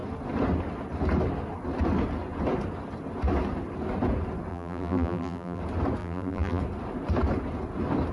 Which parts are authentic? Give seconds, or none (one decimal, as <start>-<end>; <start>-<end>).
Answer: 0.0-4.5; 5.6-6.0; 6.6-8.1